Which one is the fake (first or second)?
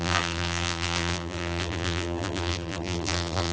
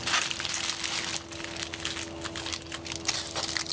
first